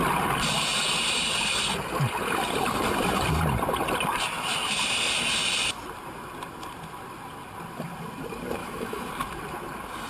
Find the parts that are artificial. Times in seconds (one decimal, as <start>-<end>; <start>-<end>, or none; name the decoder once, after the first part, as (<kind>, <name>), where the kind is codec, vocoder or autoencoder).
8.6-9.1 (autoencoder, DAC-VAE)

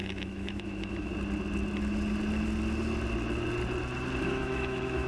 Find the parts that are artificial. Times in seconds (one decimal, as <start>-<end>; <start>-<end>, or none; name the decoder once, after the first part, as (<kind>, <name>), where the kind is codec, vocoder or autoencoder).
0.0-1.1 (autoencoder, DAC-VAE); 4.2-5.1

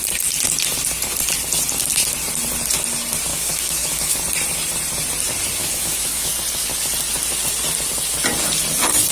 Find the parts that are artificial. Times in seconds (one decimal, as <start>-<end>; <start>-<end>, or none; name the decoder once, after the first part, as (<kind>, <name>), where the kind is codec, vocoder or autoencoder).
3.3-4.2 (autoencoder, DAC-VAE); 5.6-6.3

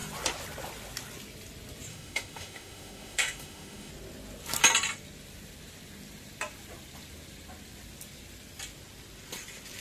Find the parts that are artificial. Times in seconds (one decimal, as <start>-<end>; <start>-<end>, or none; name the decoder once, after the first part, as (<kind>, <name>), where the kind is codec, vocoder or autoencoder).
1.9-3.9 (autoencoder, DAC-VAE)

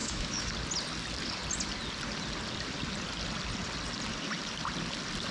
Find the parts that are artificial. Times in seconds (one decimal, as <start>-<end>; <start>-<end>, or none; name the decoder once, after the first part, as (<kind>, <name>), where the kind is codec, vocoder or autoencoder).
0.0-0.5 (autoencoder, DAC-VAE)